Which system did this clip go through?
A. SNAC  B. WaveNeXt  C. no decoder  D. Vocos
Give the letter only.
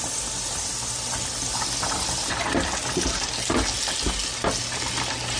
C